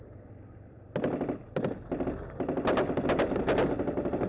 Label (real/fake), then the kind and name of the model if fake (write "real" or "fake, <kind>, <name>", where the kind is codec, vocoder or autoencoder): real